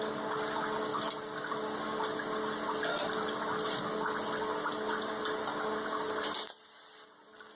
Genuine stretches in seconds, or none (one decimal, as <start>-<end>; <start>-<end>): 0.0-7.5